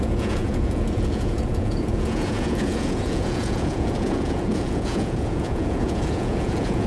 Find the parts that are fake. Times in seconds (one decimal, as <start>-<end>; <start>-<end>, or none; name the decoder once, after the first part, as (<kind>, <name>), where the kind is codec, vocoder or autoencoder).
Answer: 0.0-6.9 (vocoder, Vocos)

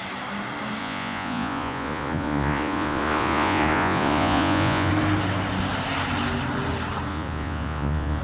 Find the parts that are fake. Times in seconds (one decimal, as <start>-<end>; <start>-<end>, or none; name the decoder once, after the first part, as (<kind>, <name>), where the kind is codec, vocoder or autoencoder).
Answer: 0.8-4.9 (vocoder, Vocos); 7.1-8.2

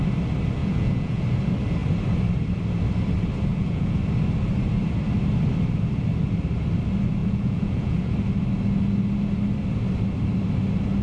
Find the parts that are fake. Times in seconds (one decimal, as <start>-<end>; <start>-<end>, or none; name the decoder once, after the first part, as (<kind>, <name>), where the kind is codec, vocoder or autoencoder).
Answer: 0.6-1.2 (vocoder, Vocos); 3.5-4.0; 7.2-8.1

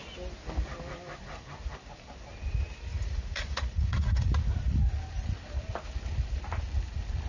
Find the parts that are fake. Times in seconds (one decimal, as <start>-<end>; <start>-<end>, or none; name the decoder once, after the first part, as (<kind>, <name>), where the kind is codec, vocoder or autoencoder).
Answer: 2.9-4.3 (vocoder, Vocos)